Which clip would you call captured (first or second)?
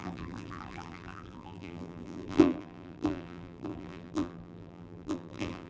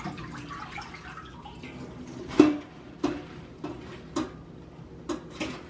second